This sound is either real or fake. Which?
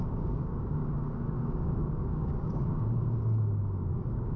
fake